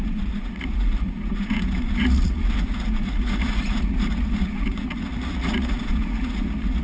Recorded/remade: remade